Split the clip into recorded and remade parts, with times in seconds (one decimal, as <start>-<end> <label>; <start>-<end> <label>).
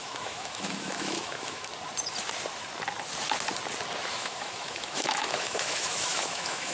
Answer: 0.0-1.7 remade; 1.7-4.1 recorded; 4.1-6.7 remade